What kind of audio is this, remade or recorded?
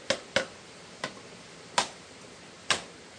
recorded